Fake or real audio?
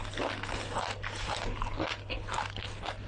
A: real